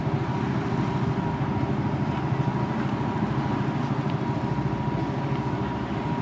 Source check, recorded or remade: recorded